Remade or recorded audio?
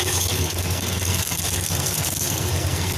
remade